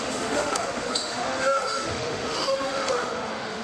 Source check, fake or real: fake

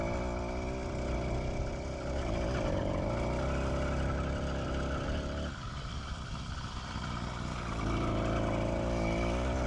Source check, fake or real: real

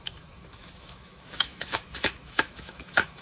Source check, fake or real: fake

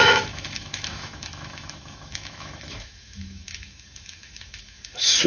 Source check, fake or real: fake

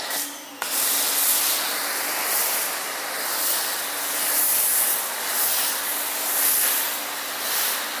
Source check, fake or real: real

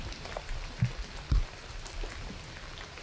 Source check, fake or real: real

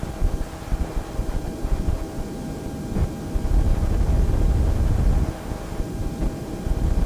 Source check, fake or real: real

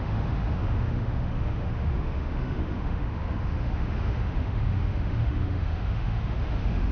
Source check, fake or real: fake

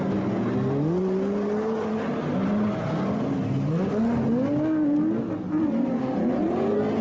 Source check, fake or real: real